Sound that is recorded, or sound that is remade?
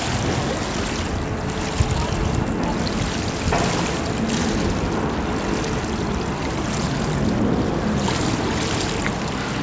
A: recorded